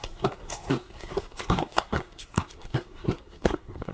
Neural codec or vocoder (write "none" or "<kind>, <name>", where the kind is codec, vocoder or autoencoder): codec, SNAC